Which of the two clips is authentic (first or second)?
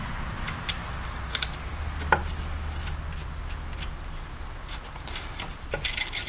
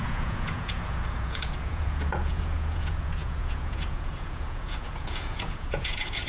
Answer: first